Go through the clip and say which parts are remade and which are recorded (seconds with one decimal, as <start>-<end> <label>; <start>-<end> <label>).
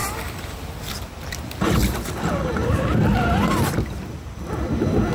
0.0-1.8 recorded; 1.8-5.1 remade